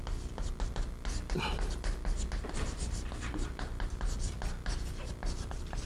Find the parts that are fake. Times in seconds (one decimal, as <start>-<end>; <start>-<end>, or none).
none